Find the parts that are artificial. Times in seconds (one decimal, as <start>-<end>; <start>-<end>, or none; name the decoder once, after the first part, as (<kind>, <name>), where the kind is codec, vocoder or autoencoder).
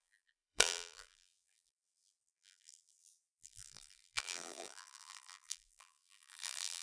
0.0-6.8 (vocoder, BigVGAN v2)